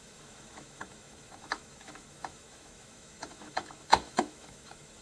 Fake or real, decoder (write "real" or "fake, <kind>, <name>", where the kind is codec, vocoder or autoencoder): fake, autoencoder, DAC-VAE